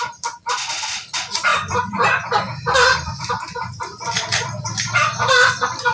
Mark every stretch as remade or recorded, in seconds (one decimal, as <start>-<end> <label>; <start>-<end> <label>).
0.0-5.9 recorded